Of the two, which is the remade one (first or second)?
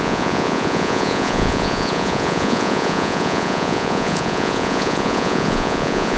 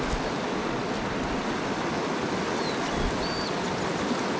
first